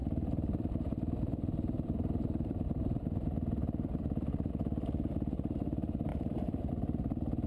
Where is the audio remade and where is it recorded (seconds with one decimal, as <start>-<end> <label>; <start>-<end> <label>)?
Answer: 0.0-4.5 remade; 4.5-6.1 recorded; 6.1-6.7 remade; 6.7-7.5 recorded